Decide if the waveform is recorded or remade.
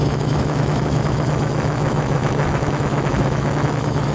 remade